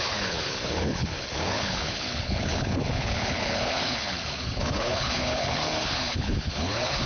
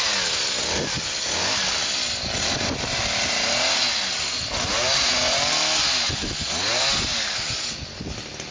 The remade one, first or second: first